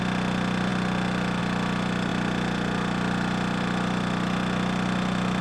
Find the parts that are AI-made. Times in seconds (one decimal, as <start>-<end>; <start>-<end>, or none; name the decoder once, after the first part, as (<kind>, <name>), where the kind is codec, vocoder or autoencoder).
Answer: none